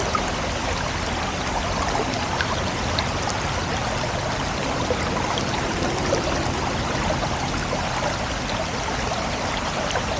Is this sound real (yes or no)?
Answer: yes